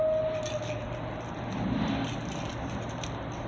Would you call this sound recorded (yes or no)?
yes